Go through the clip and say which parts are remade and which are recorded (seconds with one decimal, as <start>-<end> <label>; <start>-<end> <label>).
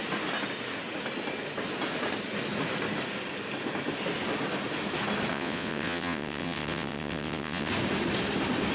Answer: 0.0-5.3 recorded; 5.3-7.7 remade; 7.7-8.7 recorded